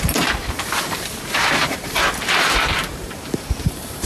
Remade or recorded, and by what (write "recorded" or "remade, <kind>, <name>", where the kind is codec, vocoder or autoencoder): remade, vocoder, BigVGAN v2